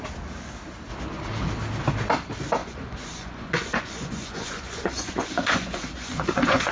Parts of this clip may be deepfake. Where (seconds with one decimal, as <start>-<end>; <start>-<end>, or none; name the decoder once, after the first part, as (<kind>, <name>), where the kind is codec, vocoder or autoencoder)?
2.6-6.7 (vocoder, Vocos)